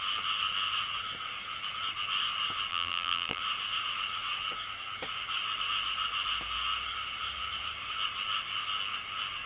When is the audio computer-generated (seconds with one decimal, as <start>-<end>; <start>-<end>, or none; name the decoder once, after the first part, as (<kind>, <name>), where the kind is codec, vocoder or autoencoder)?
2.7-3.4 (vocoder, BigVGAN v2)